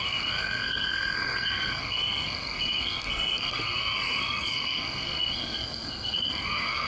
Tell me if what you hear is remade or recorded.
remade